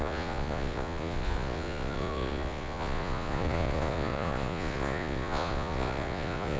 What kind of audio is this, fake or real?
fake